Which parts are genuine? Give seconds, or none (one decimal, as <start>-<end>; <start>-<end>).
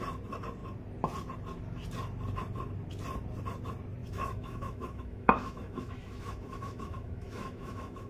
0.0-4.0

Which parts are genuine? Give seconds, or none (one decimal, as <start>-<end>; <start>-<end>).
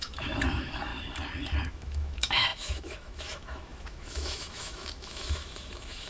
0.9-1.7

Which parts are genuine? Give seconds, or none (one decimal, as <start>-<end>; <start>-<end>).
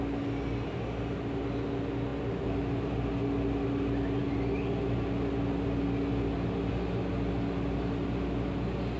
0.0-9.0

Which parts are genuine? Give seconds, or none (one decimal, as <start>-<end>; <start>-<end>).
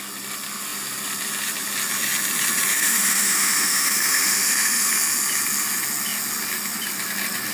0.0-2.7; 4.9-7.5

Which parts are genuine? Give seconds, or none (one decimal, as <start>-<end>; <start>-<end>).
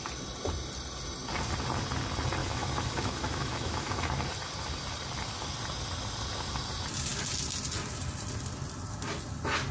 0.0-2.4; 4.1-9.7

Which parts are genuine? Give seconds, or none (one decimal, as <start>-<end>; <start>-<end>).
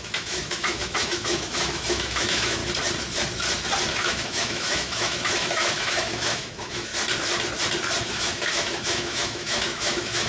2.6-3.9; 6.9-8.0